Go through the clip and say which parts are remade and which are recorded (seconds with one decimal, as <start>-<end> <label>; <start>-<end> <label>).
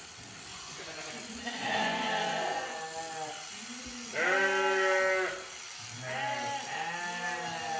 0.0-0.5 recorded; 0.5-2.8 remade; 2.8-7.8 recorded